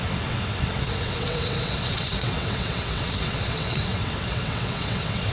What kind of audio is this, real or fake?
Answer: fake